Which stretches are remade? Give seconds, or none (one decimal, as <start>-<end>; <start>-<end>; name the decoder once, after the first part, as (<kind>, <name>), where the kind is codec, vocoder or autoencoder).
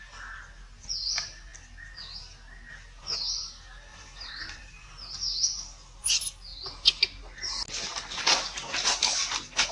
3.9-5.1 (vocoder, BigVGAN v2)